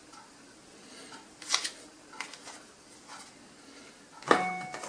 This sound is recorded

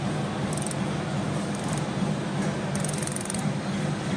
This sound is recorded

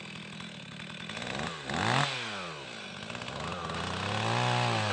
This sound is recorded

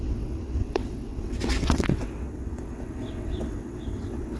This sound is remade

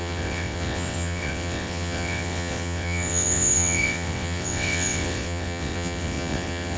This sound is remade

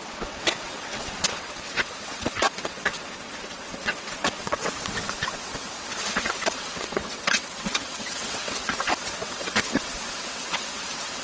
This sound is remade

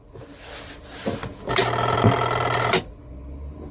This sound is recorded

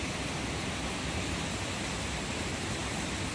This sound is recorded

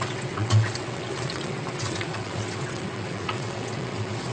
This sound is remade